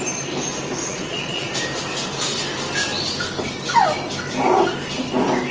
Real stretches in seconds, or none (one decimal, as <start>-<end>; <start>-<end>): 0.0-0.8; 1.5-5.5

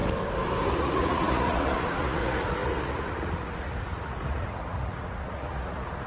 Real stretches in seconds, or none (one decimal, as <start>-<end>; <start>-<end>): 0.0-0.7